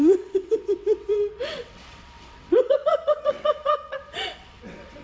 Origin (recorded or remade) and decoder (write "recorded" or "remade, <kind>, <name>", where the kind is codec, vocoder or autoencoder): remade, vocoder, WaveNeXt